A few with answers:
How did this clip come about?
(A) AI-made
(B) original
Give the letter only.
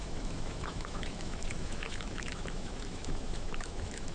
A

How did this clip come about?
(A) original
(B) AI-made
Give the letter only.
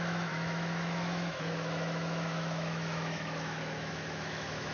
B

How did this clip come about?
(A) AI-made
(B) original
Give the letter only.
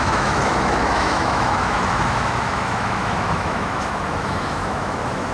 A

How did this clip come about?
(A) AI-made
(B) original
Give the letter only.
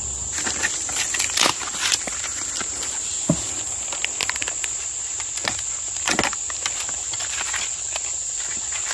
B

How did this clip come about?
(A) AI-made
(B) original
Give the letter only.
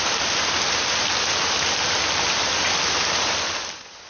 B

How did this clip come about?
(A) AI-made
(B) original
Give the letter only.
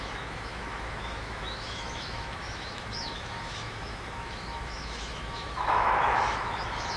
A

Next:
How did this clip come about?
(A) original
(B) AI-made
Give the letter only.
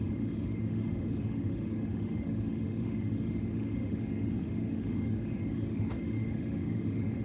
B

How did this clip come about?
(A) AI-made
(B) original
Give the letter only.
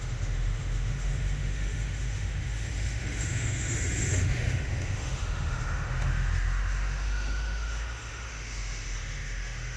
A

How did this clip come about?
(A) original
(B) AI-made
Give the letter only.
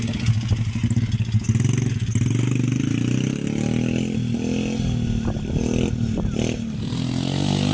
A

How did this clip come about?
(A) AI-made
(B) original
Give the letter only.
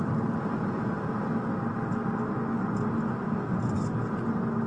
B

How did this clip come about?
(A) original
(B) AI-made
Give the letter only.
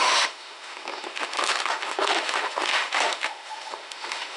B